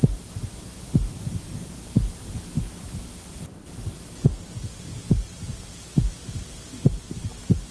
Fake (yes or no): no